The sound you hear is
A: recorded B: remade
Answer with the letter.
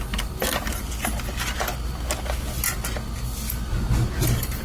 A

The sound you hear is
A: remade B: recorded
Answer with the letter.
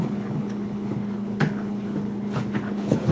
A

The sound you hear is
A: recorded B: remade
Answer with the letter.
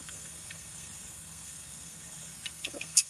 B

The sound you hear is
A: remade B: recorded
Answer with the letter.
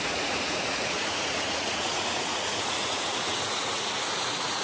A